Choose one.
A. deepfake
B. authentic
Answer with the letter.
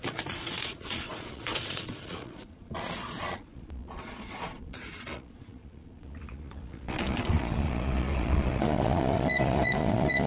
A